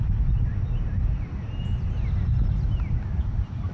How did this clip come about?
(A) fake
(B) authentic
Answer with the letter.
B